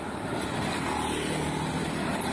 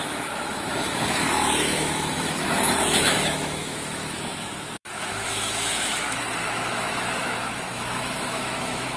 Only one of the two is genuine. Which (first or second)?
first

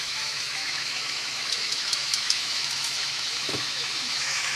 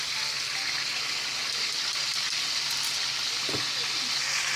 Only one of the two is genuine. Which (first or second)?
second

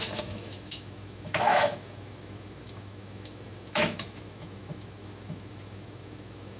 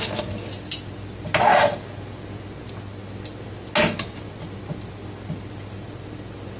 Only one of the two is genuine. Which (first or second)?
second